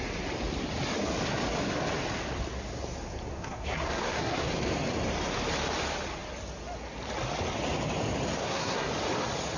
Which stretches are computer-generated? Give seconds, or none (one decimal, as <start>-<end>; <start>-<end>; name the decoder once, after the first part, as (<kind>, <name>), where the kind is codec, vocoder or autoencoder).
3.3-4.5 (codec, SNAC); 8.4-8.9